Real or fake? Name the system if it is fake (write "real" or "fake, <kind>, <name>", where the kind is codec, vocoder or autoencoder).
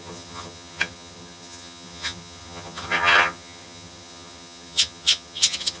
fake, vocoder, HiFi-GAN